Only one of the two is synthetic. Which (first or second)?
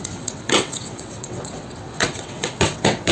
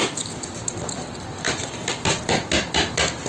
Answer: first